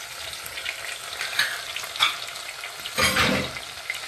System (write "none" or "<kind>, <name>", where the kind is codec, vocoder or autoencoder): none